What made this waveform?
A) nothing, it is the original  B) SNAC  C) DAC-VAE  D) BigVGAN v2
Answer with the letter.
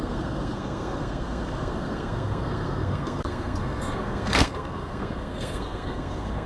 B